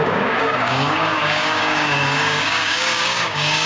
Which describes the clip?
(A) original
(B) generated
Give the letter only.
B